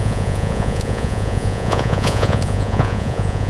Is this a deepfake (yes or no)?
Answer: yes